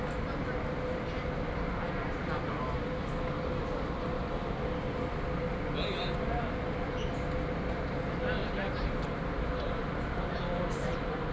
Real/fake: real